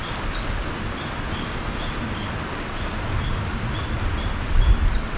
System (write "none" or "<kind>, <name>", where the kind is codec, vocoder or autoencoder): none